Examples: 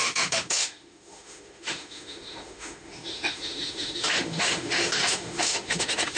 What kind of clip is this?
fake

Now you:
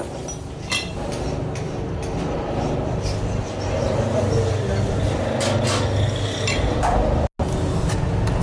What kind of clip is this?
real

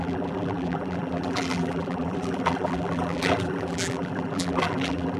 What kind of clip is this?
fake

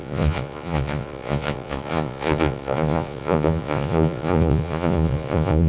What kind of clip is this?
fake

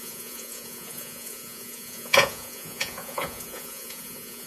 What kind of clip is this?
fake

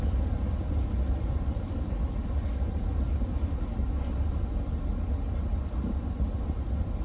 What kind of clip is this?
real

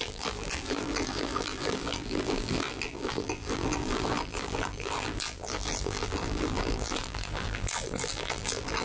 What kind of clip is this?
fake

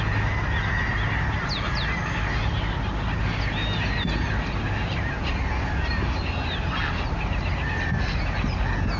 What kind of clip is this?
real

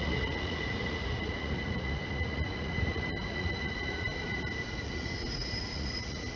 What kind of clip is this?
fake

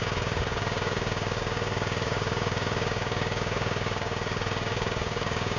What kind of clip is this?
fake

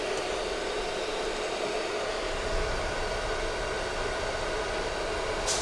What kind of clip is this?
real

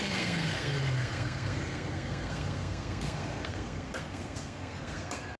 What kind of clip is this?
fake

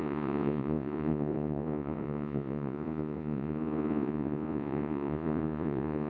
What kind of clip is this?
fake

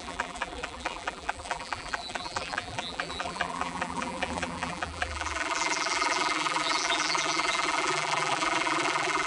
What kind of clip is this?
fake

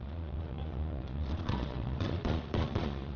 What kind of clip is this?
fake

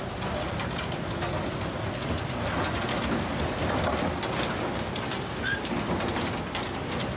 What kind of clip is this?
real